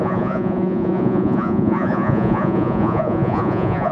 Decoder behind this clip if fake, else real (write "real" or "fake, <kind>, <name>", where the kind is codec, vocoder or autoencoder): fake, vocoder, Vocos